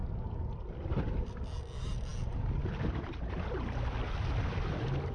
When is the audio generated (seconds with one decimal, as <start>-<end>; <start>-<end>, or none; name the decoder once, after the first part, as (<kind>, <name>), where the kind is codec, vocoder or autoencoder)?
none

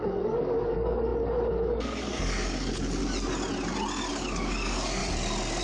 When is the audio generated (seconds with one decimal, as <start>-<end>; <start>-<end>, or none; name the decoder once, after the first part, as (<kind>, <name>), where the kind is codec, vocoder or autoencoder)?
0.0-3.0 (codec, DAC); 4.1-5.0

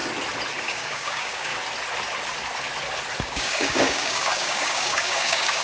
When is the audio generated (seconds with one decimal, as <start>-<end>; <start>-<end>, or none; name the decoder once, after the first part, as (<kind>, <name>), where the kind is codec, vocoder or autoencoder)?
0.6-1.5 (codec, DAC); 3.2-5.6

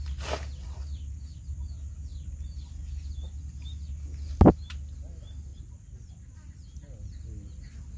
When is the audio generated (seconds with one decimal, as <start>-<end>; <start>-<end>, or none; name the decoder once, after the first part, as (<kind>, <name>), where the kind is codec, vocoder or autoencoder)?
none

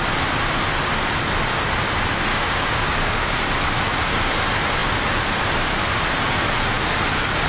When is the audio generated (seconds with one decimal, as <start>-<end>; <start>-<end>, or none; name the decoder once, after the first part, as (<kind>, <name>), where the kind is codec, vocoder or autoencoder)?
2.3-3.5 (codec, DAC)

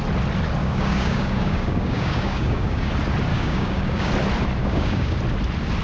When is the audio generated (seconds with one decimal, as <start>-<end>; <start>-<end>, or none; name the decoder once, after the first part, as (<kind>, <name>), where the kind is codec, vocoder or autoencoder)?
0.6-2.9 (codec, DAC); 3.3-4.1; 4.6-5.2